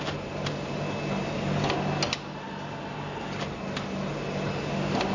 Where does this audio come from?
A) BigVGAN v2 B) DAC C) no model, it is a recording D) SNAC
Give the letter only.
C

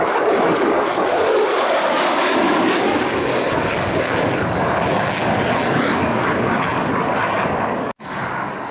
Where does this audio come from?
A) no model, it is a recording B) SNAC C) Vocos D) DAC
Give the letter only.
D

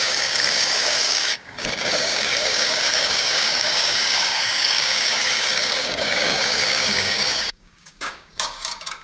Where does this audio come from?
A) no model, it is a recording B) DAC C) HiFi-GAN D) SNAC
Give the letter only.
B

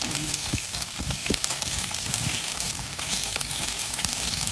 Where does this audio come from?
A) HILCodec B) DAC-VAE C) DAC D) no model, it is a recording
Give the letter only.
C